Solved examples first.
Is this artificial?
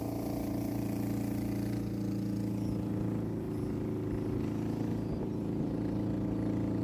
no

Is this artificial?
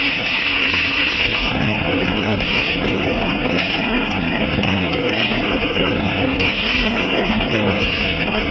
yes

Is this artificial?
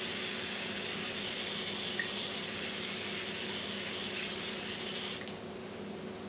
no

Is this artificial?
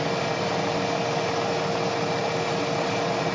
no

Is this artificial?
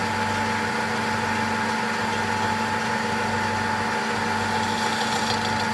no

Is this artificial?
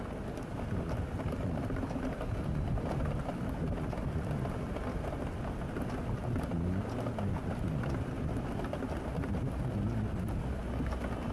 no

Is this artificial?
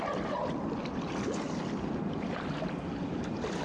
no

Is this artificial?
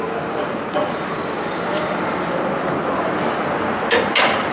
no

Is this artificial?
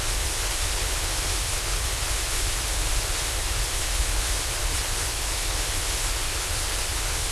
yes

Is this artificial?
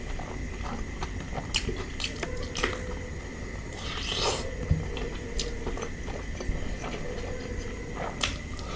no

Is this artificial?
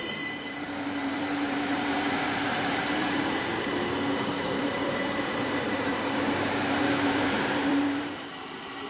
yes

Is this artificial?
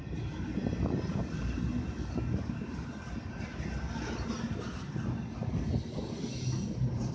no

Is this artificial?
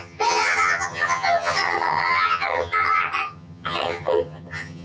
yes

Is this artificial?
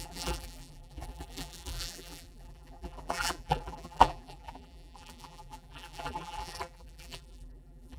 yes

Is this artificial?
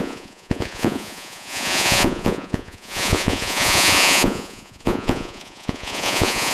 yes